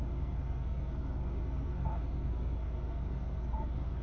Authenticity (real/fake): fake